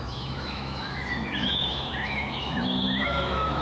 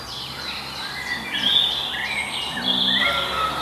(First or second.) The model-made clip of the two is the first